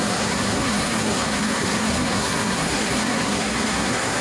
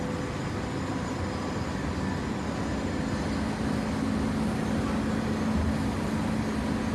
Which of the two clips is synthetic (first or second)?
first